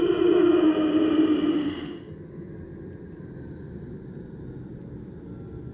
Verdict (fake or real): real